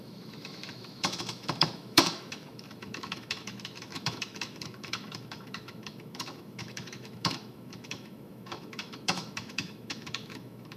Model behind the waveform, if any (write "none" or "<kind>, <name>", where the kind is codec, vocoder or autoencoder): autoencoder, DAC-VAE